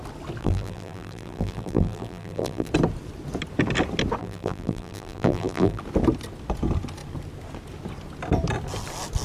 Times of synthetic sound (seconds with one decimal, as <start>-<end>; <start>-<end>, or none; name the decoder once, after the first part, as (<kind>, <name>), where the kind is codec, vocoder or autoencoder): 0.4-2.7 (vocoder, BigVGAN v2); 4.2-5.8